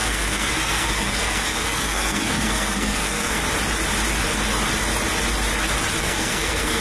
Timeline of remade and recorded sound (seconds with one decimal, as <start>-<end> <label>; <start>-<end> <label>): 0.0-3.4 remade; 3.4-6.0 recorded; 6.0-6.8 remade